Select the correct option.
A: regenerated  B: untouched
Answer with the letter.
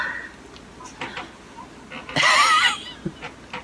B